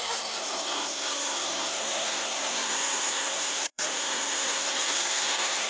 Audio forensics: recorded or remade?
remade